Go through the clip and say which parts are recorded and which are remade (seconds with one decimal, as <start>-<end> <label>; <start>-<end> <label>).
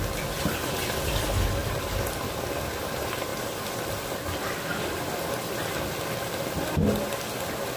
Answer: 0.0-7.8 recorded